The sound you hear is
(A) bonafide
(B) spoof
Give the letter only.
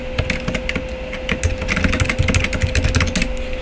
A